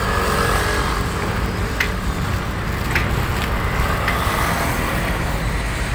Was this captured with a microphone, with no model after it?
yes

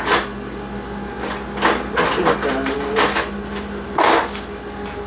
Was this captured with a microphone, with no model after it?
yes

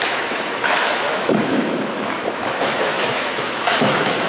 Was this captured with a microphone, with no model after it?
no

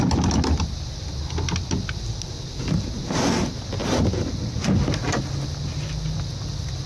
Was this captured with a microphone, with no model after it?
yes